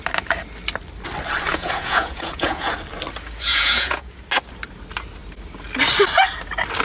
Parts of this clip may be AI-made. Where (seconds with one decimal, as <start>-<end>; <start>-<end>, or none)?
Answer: 1.5-2.7; 3.5-4.2